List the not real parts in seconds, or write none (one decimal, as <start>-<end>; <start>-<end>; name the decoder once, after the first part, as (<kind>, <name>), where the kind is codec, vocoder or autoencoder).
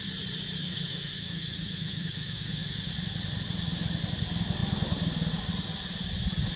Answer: 0.6-2.9 (autoencoder, DAC-VAE)